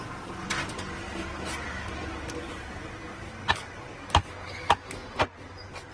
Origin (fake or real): real